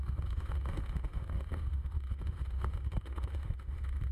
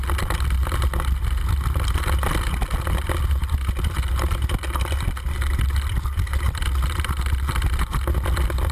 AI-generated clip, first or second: first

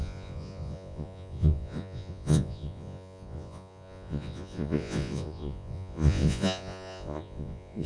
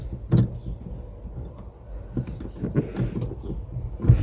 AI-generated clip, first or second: first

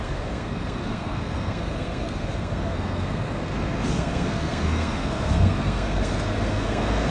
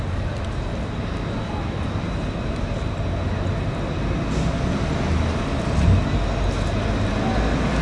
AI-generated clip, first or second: first